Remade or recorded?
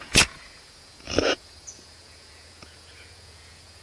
remade